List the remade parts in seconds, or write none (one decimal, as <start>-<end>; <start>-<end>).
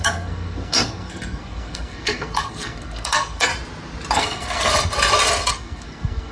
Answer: 0.0-3.5; 4.1-4.7; 5.5-6.3